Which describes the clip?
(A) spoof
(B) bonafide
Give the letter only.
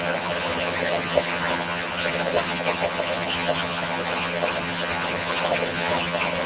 A